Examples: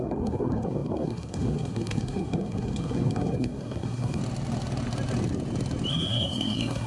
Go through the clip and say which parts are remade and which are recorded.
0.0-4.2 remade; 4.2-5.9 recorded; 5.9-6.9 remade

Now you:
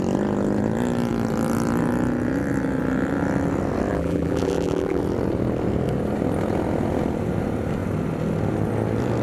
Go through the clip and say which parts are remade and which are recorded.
0.0-3.9 recorded; 3.9-5.0 remade; 5.0-9.2 recorded